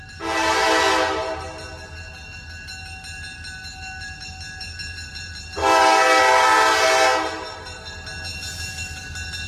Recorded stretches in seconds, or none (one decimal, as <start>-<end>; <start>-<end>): 0.0-5.6; 6.2-9.5